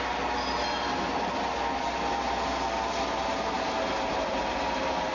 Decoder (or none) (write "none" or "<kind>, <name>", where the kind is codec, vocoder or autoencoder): none